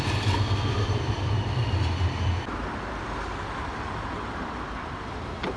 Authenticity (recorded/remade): recorded